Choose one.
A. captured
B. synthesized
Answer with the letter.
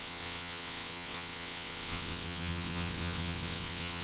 B